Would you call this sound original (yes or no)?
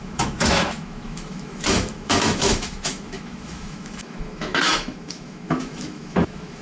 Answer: no